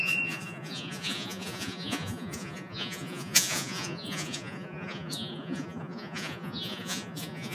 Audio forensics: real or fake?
fake